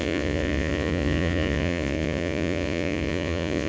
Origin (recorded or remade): remade